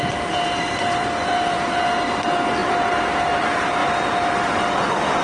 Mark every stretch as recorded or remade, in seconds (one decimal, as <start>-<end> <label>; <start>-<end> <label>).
0.0-2.6 remade; 2.6-3.4 recorded; 3.4-3.8 remade; 3.8-4.8 recorded; 4.8-5.2 remade